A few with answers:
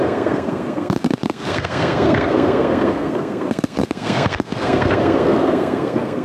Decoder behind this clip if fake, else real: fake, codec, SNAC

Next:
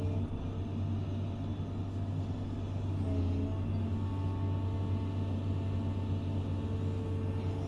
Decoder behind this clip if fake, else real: real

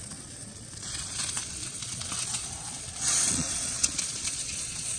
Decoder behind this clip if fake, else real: fake, vocoder, Vocos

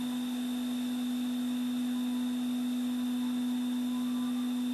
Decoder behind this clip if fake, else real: real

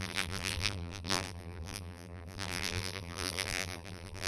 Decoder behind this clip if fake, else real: fake, vocoder, BigVGAN v2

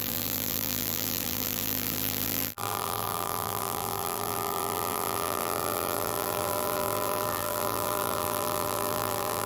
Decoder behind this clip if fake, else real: fake, vocoder, BigVGAN v2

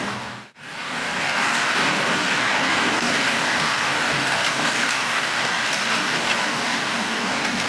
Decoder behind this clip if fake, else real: fake, codec, DAC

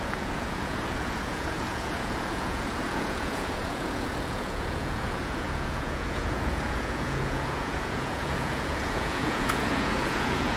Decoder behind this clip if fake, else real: fake, vocoder, Vocos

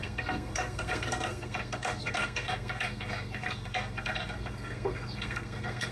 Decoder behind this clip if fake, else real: fake, codec, SNAC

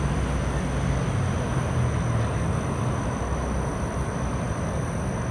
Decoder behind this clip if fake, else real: real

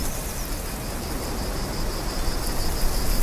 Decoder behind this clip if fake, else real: real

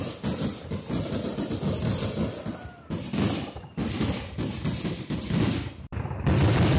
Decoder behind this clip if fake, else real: real